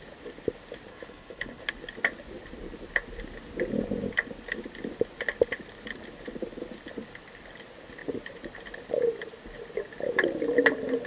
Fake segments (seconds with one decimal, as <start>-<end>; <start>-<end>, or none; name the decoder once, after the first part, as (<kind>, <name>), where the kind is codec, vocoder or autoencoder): 0.9-1.6 (codec, HILCodec)